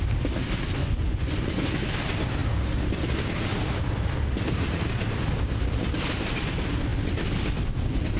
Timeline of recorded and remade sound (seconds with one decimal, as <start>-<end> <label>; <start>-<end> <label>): 0.0-0.8 recorded; 0.8-1.8 remade; 1.8-8.2 recorded

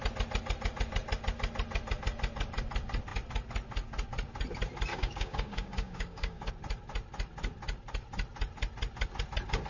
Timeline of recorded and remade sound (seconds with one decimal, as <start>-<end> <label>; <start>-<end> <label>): 0.0-4.9 recorded; 4.9-6.5 remade; 6.5-9.7 recorded

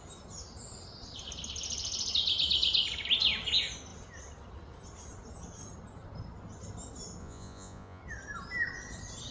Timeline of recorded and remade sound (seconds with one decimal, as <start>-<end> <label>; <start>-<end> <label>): 0.0-7.2 recorded; 7.2-8.0 remade; 8.0-9.3 recorded

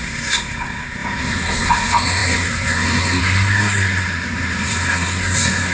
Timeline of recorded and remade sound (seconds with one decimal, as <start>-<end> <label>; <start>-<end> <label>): 0.0-5.7 remade

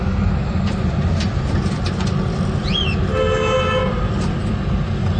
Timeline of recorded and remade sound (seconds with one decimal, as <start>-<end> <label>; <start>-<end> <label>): 0.0-5.2 recorded

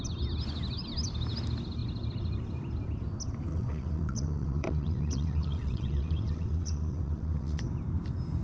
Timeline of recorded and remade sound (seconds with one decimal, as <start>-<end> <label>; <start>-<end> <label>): 0.0-3.5 recorded; 3.5-7.6 remade; 7.6-8.4 recorded

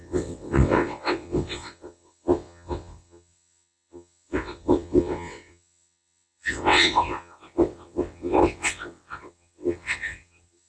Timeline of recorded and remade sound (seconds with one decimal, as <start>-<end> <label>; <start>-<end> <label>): 0.0-10.7 remade